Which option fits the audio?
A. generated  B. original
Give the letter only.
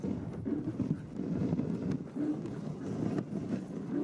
B